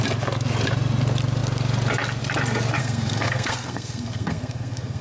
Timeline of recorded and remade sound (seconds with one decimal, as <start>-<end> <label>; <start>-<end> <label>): 0.0-2.8 recorded; 2.8-5.0 remade